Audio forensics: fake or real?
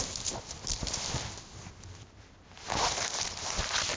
real